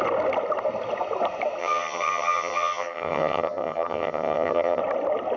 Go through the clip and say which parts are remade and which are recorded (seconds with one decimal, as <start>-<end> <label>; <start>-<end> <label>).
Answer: 0.0-1.6 recorded; 1.6-4.8 remade; 4.8-5.4 recorded